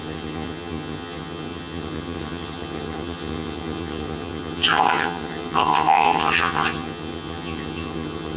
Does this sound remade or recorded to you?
remade